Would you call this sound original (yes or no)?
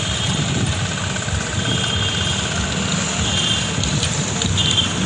yes